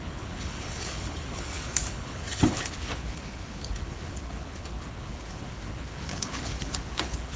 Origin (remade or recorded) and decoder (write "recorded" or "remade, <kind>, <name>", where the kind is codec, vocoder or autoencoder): remade, codec, HILCodec